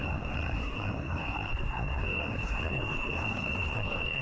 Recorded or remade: remade